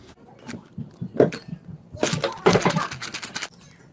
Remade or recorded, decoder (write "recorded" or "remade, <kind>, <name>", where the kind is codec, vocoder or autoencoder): recorded